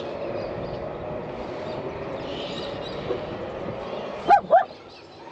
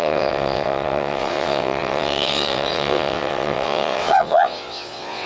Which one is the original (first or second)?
first